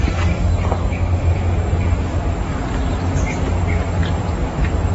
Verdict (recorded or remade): recorded